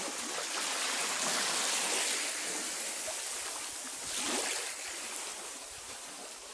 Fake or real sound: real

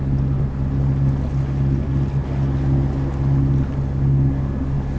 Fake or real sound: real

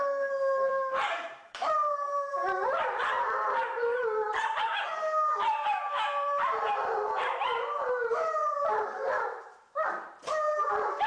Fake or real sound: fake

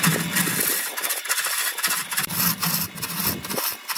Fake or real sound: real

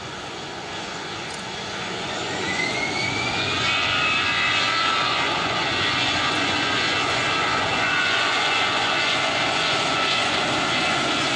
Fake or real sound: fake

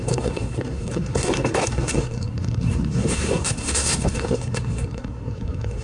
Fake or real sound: fake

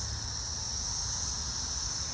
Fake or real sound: real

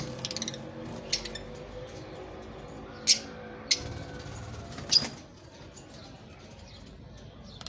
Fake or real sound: real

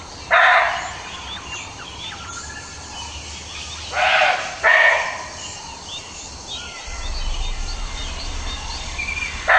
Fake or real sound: real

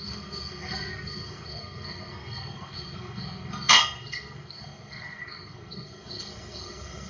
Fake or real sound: fake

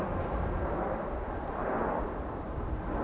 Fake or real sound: real